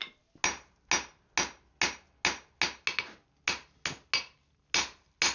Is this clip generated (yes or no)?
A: no